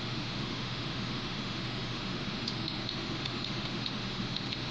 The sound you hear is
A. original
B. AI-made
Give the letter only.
B